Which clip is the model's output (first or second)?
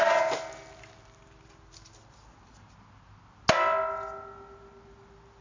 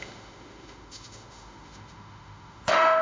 second